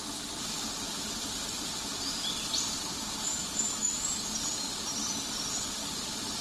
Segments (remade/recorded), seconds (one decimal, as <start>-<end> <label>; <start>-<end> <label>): 0.0-3.3 recorded; 3.3-4.3 remade; 4.3-6.4 recorded